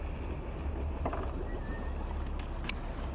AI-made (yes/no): no